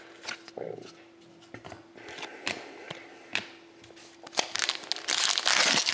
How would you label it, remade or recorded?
recorded